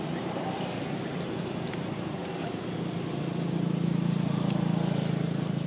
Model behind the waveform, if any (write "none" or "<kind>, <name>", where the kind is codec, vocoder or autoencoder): none